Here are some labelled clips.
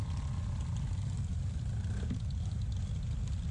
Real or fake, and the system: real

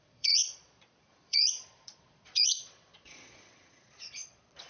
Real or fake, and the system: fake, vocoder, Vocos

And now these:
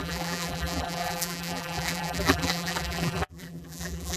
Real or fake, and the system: fake, vocoder, BigVGAN v2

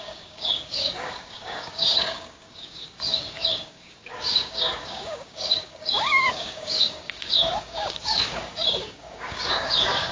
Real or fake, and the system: fake, codec, DAC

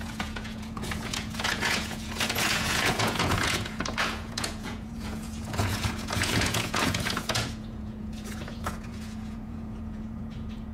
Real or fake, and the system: fake, vocoder, Vocos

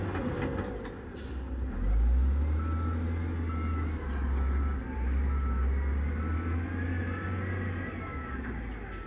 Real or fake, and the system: real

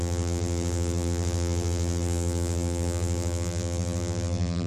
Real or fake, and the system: fake, vocoder, BigVGAN v2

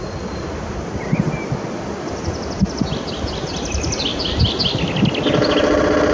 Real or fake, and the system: real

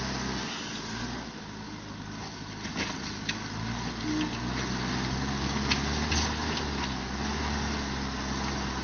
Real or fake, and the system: real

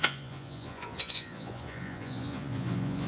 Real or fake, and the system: fake, vocoder, Vocos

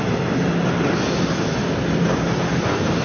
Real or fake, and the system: real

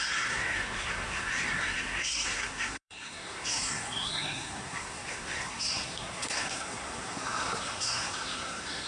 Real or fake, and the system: fake, codec, SNAC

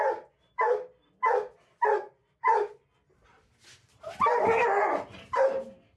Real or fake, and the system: real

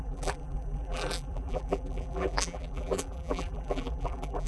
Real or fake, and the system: fake, vocoder, BigVGAN v2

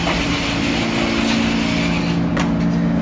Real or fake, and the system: real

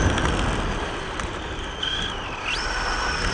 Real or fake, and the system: real